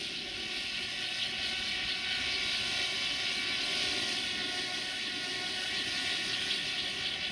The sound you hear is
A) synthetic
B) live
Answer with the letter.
B